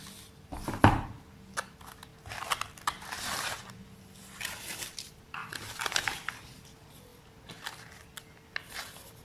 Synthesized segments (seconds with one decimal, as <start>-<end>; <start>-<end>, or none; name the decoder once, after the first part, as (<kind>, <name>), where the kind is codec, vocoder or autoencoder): 0.0-2.1 (vocoder, BigVGAN v2); 2.6-5.4; 6.3-7.1; 8.7-9.2